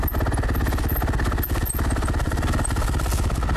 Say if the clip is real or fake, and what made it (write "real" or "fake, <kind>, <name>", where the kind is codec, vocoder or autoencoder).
real